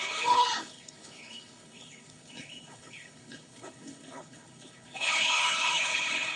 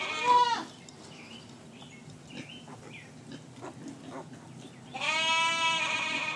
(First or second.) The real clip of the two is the second